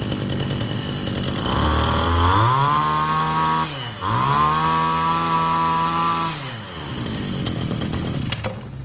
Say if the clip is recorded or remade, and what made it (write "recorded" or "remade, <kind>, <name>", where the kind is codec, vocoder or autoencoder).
recorded